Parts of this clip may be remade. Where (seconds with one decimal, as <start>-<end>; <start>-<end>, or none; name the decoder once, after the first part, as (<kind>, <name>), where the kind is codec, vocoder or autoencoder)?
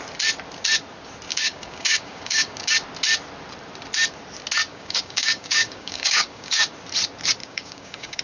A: 1.3-2.7 (codec, DAC); 4.7-6.6; 7.4-8.2